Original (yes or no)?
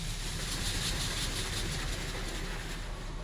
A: yes